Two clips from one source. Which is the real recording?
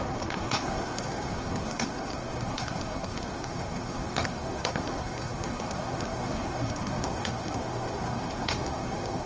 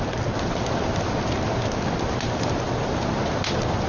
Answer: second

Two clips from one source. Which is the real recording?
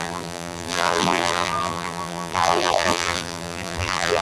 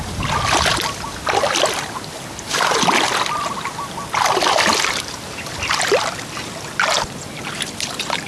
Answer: second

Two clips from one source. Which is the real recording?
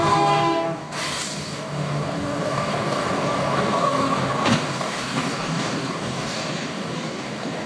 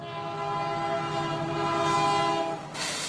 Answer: second